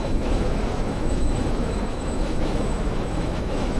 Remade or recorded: remade